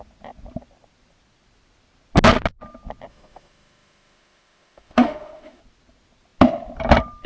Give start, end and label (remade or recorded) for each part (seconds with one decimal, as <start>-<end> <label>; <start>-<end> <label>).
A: 0.0-3.1 recorded; 3.1-5.6 remade; 5.6-7.3 recorded